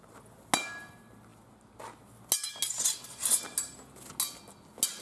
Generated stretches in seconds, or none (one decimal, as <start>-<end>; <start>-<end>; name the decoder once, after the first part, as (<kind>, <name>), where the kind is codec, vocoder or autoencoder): none